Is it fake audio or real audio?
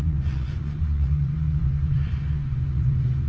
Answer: fake